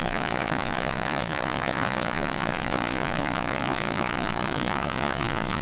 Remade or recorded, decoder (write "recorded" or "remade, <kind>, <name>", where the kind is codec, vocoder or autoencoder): remade, vocoder, Vocos